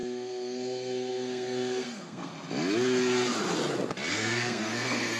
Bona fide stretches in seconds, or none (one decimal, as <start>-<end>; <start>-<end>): 2.3-4.1